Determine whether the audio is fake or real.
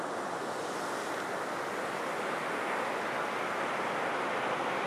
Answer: real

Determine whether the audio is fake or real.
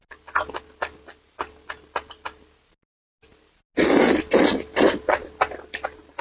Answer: real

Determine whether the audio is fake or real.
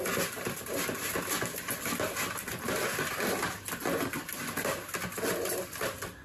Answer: real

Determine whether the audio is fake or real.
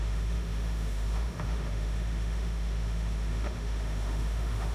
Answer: fake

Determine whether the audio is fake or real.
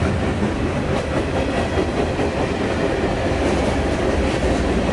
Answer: real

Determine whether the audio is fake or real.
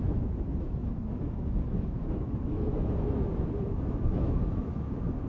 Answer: fake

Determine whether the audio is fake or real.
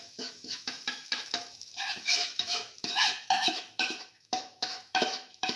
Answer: fake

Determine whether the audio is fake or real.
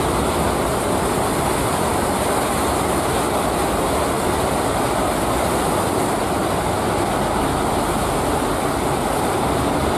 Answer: real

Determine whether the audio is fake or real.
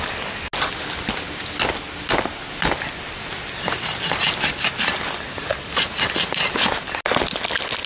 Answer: real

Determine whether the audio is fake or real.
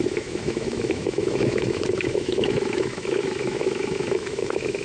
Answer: fake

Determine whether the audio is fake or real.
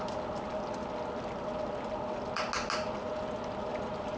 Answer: real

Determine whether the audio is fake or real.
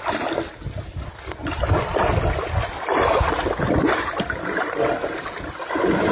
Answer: real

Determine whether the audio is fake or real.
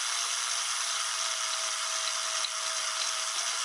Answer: real